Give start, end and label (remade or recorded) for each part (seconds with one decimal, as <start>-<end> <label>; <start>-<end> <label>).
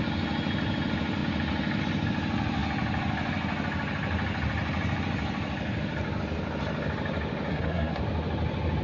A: 0.0-7.5 recorded; 7.5-8.0 remade; 8.0-8.8 recorded